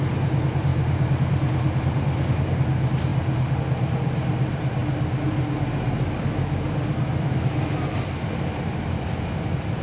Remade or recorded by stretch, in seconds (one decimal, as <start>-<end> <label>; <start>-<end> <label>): 0.0-9.8 recorded